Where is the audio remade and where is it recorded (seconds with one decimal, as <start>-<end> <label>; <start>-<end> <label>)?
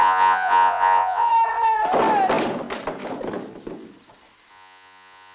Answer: 0.0-1.3 remade; 1.3-4.5 recorded; 4.5-5.3 remade